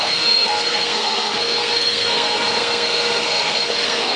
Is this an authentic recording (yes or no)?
no